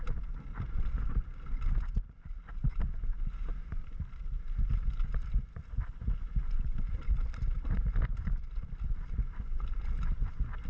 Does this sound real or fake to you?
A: real